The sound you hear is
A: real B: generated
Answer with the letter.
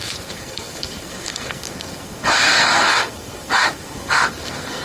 B